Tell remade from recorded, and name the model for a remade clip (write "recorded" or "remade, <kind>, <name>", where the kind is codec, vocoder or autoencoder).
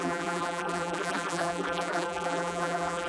remade, vocoder, BigVGAN v2